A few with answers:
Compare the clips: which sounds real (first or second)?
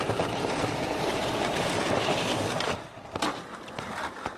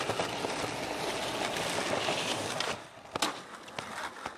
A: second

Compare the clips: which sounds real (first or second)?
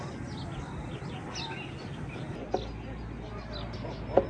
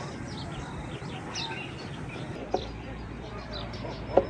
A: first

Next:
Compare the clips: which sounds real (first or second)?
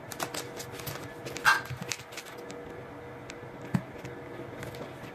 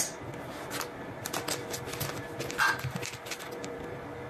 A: first